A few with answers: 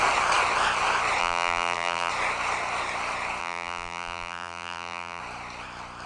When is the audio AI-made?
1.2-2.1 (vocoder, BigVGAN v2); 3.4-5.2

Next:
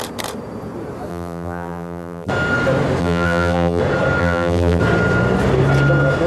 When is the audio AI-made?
1.1-2.3 (vocoder, BigVGAN v2); 3.0-3.8; 4.2-4.8

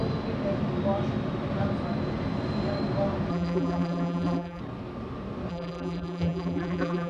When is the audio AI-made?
3.3-4.6 (vocoder, BigVGAN v2); 5.5-7.1